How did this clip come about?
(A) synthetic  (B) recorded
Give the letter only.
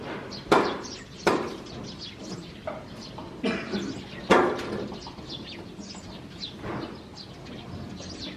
B